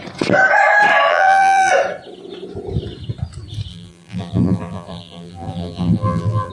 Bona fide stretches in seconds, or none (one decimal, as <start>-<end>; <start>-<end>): 0.0-1.1; 1.7-3.7